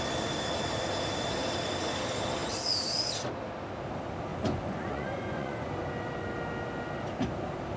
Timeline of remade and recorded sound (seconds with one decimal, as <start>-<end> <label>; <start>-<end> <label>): 0.0-4.3 recorded; 4.3-5.7 remade; 5.7-7.8 recorded